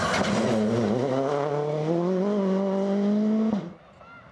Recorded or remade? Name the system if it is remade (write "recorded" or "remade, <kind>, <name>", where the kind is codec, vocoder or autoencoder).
recorded